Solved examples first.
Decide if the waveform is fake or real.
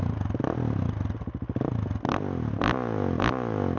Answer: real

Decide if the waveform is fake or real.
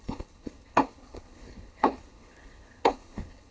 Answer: fake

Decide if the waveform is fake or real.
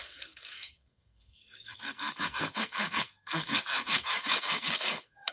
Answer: fake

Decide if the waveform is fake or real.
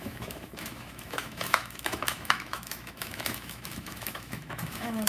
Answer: fake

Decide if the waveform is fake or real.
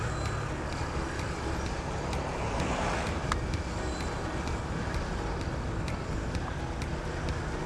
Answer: real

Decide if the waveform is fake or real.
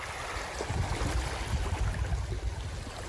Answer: real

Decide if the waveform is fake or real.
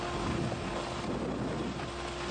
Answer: real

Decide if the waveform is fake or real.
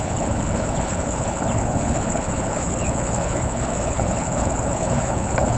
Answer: fake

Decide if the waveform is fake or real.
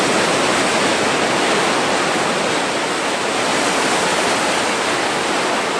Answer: real